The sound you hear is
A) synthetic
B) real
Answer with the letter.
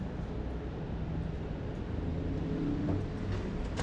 B